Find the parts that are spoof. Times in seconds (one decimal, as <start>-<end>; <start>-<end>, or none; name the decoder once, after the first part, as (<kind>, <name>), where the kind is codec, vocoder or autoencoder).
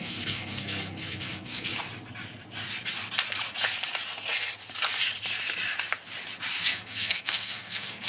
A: 0.0-1.7 (codec, SNAC); 6.6-8.1